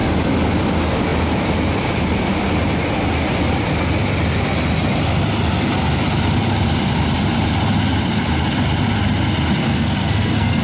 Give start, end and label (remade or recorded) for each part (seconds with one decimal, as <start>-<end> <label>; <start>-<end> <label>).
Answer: 0.0-9.6 recorded; 9.6-10.6 remade